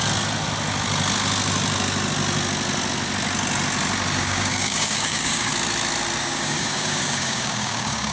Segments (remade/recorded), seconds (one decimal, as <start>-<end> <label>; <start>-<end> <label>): 0.0-4.2 recorded; 4.2-5.5 remade; 5.5-6.2 recorded; 6.2-8.1 remade